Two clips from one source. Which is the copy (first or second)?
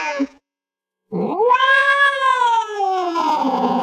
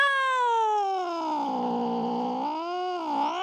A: first